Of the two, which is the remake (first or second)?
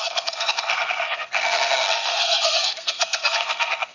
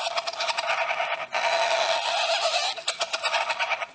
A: first